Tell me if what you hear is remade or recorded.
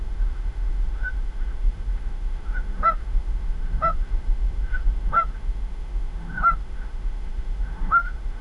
remade